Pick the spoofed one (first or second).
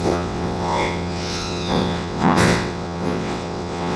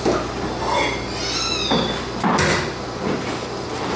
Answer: first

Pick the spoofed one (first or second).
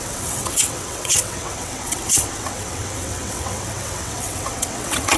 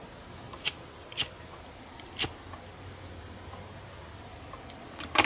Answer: first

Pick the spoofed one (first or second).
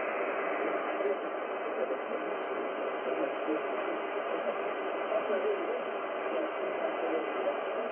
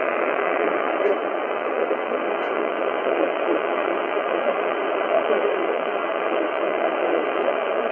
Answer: second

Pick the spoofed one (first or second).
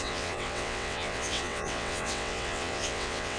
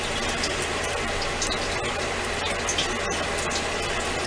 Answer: first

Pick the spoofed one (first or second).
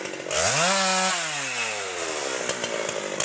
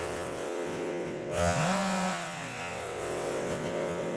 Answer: second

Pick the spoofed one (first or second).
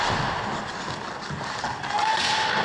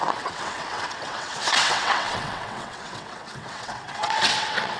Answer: second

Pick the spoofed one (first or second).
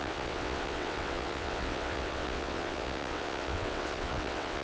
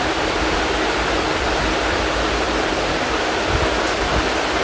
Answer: first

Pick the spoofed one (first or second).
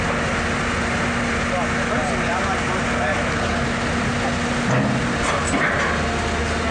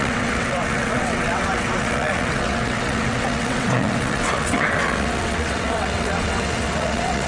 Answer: second